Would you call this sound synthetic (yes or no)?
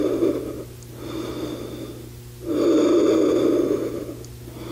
no